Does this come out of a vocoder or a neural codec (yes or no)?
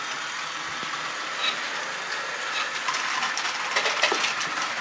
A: no